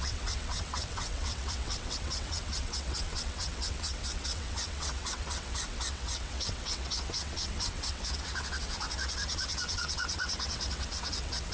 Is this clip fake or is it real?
fake